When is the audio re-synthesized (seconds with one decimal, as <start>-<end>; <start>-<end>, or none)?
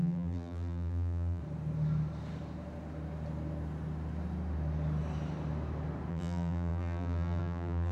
0.0-1.4; 6.1-7.9